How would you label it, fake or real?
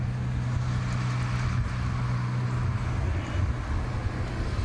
real